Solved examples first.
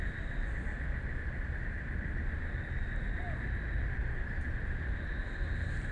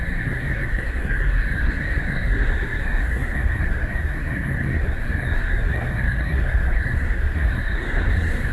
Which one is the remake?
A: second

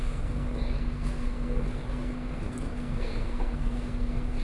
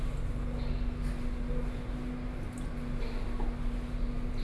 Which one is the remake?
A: first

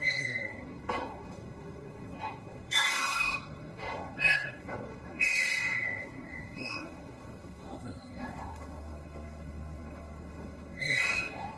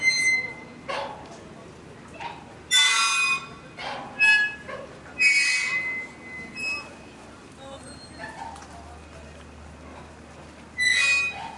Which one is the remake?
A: first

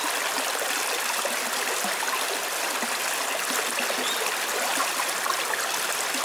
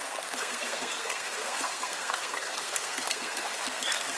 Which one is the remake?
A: second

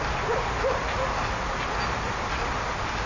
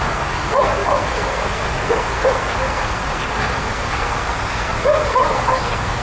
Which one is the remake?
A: second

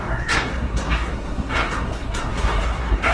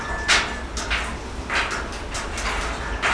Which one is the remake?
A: first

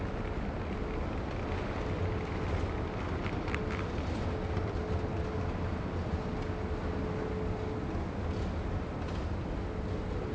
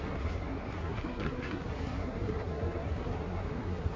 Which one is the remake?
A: second